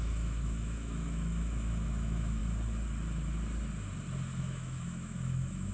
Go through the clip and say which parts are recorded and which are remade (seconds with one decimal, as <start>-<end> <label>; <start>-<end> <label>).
0.0-2.4 remade; 2.4-4.4 recorded; 4.4-5.7 remade